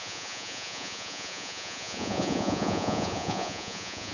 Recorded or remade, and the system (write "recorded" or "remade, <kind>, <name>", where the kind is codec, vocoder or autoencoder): remade, vocoder, Vocos